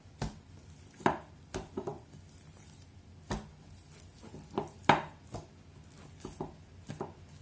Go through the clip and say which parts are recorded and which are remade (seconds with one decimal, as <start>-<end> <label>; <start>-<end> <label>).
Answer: 0.0-7.4 recorded